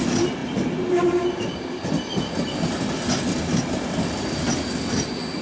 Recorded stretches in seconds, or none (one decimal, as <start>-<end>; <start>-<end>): 0.0-5.4